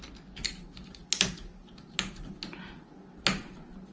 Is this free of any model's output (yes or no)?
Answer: yes